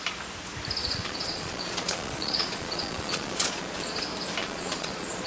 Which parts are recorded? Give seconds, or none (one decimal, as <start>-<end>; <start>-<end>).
0.0-0.8; 4.0-4.4